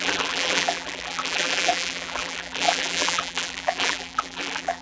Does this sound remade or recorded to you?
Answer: remade